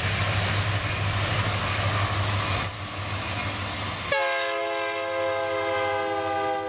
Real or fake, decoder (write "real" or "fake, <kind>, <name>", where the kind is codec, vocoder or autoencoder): real